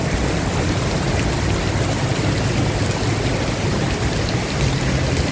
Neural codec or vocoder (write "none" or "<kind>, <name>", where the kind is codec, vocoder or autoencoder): none